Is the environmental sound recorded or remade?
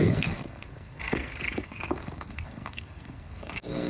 remade